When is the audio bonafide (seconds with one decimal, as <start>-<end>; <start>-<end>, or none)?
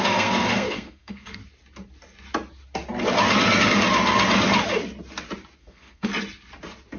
1.4-5.6; 6.1-7.0